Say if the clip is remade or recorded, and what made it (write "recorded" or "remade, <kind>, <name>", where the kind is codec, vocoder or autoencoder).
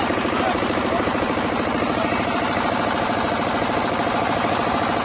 recorded